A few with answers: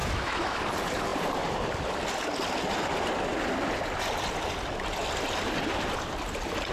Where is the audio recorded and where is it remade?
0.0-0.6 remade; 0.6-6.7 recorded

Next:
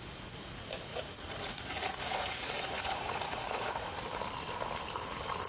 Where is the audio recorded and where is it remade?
0.0-0.9 recorded; 0.9-4.0 remade; 4.0-5.5 recorded

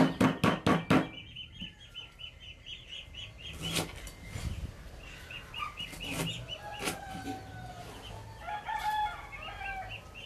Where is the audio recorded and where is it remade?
0.0-10.3 recorded

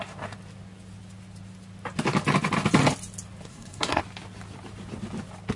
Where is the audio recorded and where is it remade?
0.0-3.5 recorded; 3.5-4.0 remade; 4.0-5.6 recorded

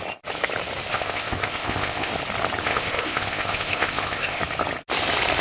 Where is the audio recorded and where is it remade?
0.0-0.9 recorded; 0.9-2.1 remade; 2.1-2.6 recorded; 2.6-4.4 remade; 4.4-5.4 recorded